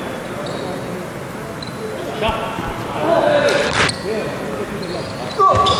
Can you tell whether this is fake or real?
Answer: real